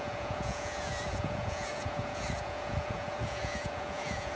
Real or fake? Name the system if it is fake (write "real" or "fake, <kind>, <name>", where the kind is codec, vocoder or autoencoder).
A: fake, vocoder, Vocos